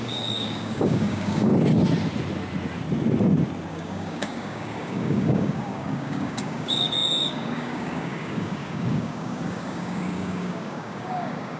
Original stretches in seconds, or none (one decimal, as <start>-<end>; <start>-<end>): 1.5-3.7